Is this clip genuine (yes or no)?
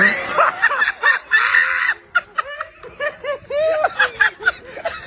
yes